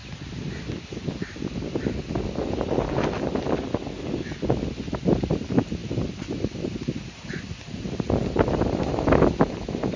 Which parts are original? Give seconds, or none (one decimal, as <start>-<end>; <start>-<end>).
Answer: 0.0-10.0